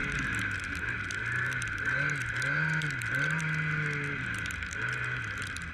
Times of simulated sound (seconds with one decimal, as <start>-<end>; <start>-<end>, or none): none